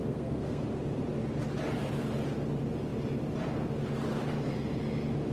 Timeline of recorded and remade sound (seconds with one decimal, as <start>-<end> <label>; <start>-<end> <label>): 0.0-0.6 remade; 0.6-5.3 recorded